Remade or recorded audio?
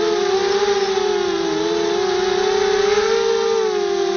recorded